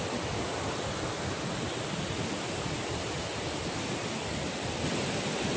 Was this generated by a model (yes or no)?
no